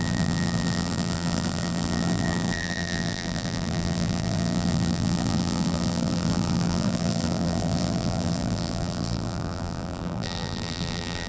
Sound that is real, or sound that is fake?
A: fake